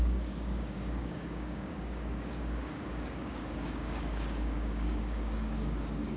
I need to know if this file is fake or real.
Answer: fake